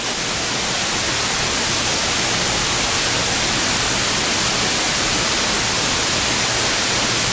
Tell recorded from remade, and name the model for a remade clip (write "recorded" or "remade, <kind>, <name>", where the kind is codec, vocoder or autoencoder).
recorded